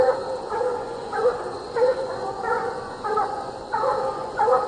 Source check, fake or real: fake